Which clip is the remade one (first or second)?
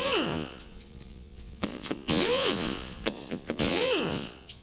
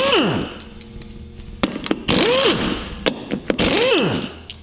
first